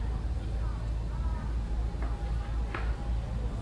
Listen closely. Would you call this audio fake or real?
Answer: real